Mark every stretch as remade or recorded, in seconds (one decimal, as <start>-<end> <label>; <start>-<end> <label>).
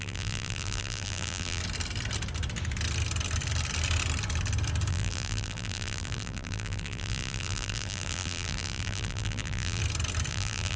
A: 0.0-1.6 remade; 1.6-4.9 recorded; 4.9-9.8 remade; 9.8-10.3 recorded; 10.3-10.8 remade